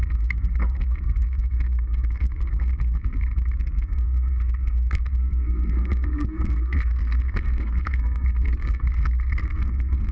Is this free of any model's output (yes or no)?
no